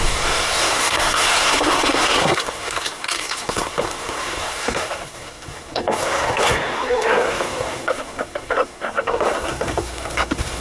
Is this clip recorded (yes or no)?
no